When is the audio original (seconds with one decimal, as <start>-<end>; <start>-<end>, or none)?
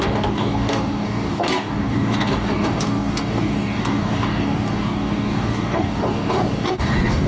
none